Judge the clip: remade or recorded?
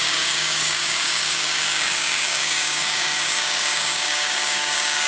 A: remade